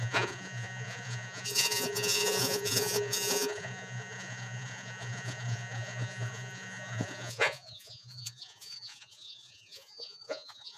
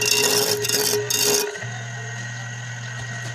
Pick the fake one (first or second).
first